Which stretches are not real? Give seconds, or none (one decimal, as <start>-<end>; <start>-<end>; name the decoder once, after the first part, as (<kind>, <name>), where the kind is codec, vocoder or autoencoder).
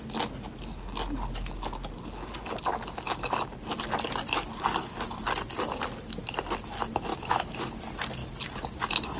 7.1-7.7 (autoencoder, DAC-VAE)